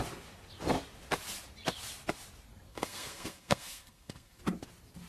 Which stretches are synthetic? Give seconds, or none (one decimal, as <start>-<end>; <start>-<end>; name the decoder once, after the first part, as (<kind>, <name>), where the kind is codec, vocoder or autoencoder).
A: 2.7-4.4 (codec, SNAC)